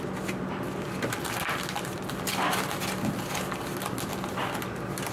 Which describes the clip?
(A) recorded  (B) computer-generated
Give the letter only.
A